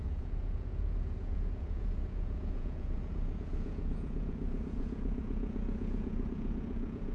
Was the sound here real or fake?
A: fake